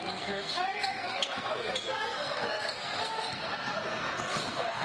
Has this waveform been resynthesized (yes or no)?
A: yes